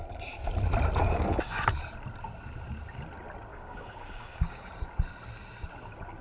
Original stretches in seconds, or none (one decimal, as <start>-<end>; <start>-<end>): 0.0-1.0; 1.6-3.5; 4.7-6.2